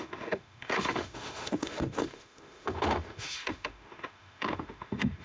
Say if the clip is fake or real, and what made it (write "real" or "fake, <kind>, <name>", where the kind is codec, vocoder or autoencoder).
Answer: fake, autoencoder, DAC-VAE